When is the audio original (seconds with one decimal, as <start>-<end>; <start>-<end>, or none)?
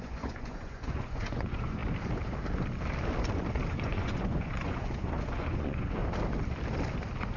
1.8-3.7; 6.0-7.4